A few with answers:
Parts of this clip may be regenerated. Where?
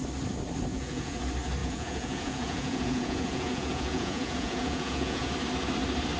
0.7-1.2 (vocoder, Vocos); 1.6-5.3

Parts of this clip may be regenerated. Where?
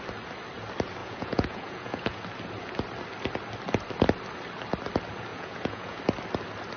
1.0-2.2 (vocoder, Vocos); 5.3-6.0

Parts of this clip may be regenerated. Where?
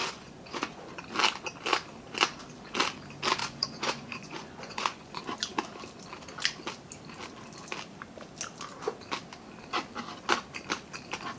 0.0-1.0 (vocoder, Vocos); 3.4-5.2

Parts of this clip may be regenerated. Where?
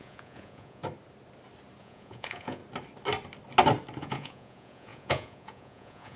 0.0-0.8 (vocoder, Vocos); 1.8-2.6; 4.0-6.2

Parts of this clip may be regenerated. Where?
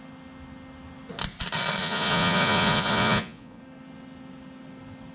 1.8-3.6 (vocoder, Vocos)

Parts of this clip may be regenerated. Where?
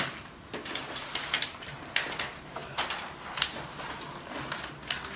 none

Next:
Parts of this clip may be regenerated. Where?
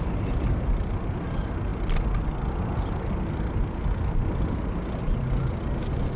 none